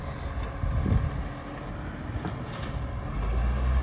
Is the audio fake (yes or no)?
no